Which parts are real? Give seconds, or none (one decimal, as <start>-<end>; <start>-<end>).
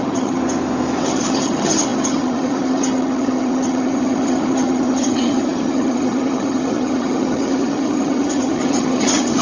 0.4-1.0